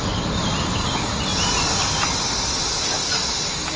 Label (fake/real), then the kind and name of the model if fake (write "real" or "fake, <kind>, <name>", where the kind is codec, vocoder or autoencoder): real